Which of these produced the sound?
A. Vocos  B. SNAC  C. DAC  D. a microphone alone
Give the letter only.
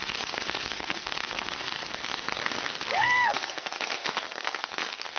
B